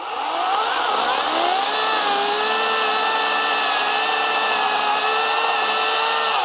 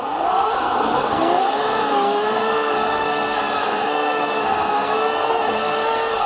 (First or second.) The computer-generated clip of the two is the second